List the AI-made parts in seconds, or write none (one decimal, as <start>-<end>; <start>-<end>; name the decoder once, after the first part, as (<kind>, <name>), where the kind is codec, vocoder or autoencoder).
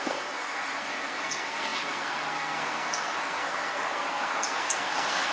0.0-5.3 (codec, SNAC)